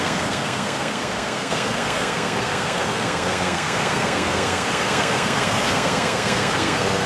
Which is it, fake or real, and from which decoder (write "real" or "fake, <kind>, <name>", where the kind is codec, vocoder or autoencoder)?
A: fake, codec, SNAC